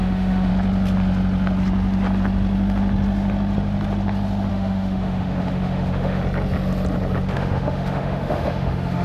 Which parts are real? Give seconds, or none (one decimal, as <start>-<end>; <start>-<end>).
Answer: 0.5-4.5; 6.2-7.3